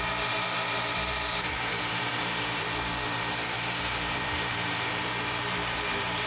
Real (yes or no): no